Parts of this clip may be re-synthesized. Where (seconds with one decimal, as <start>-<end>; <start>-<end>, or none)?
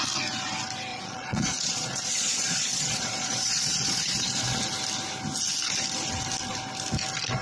0.9-4.6